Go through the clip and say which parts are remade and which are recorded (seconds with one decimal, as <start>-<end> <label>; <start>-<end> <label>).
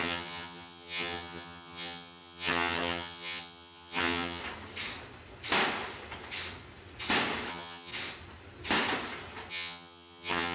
0.0-4.4 remade; 4.4-7.5 recorded; 7.5-7.9 remade; 7.9-9.5 recorded; 9.5-10.5 remade